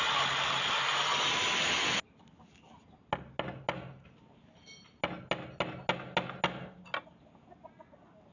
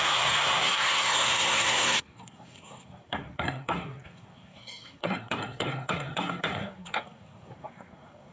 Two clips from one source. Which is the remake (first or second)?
second